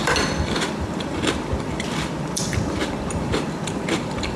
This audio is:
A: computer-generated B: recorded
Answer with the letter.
A